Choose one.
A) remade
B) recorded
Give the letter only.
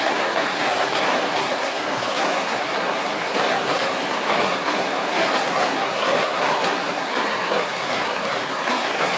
A